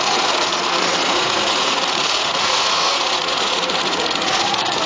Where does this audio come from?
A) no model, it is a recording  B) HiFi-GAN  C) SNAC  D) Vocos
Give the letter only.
D